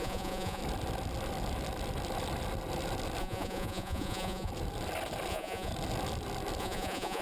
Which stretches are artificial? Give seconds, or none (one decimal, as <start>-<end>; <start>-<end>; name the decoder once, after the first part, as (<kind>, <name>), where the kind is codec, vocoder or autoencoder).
0.0-0.6 (vocoder, Vocos); 3.2-4.5; 5.3-5.7; 6.6-7.2

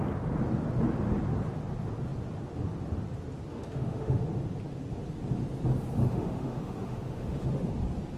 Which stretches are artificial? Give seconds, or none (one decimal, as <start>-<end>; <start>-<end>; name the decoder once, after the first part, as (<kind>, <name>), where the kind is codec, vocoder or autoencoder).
3.5-4.2 (autoencoder, DAC-VAE); 6.0-7.7

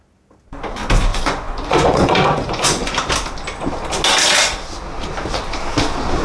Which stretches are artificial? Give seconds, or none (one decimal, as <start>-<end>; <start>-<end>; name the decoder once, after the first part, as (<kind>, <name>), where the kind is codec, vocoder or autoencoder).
1.1-3.1 (vocoder, Vocos)

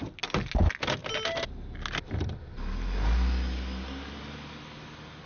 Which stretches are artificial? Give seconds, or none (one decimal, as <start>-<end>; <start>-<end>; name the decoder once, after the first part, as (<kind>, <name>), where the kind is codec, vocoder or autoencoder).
none

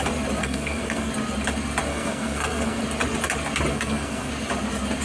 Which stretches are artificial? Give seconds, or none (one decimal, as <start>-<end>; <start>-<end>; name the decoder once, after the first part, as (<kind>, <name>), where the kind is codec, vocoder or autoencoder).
0.4-1.1 (codec, SNAC); 1.9-2.8; 3.7-4.3